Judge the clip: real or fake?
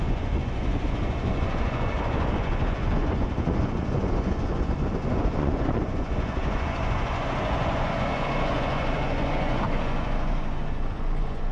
fake